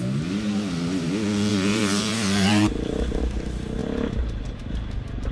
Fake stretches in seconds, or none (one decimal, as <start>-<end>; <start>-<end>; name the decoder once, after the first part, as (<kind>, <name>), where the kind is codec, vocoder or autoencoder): 1.5-3.2 (vocoder, BigVGAN v2)